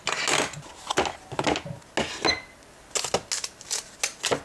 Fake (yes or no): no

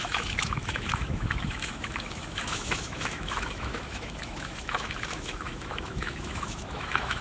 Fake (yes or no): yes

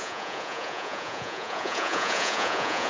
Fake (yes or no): yes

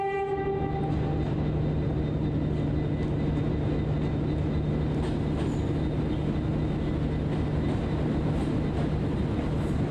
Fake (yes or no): no